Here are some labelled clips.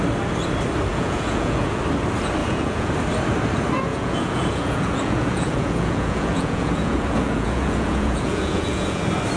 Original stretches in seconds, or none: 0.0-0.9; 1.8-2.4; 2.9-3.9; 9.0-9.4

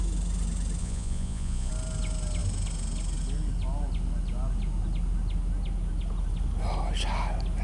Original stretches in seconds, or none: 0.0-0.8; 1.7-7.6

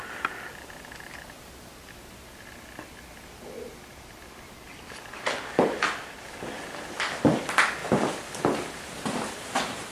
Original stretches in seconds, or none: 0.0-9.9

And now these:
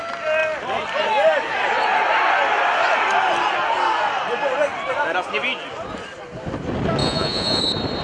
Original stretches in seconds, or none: 0.0-7.0; 7.6-8.0

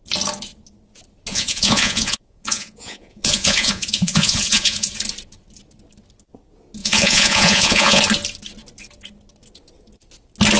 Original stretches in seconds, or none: 0.0-1.3; 4.9-6.8; 8.0-10.6

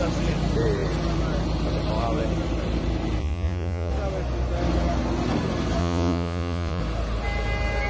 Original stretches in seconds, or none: 0.0-3.2; 3.9-5.8; 6.8-7.9

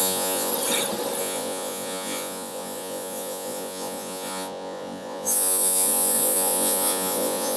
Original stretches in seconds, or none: 0.5-1.2

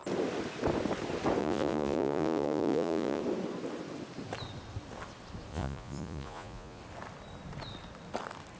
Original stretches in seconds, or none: 0.0-1.4; 3.2-5.5; 6.8-8.6